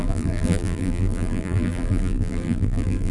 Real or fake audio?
fake